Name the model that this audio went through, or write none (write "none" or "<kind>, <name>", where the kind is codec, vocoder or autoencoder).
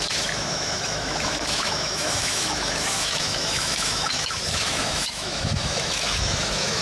autoencoder, DAC-VAE